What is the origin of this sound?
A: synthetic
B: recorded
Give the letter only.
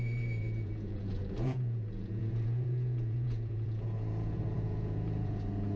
A